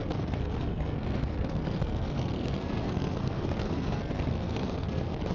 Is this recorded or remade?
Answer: remade